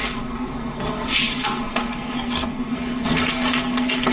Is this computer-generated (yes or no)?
yes